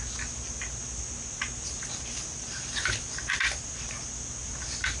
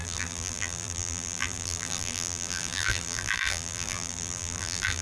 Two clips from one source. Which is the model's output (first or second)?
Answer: second